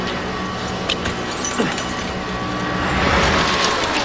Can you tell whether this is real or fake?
real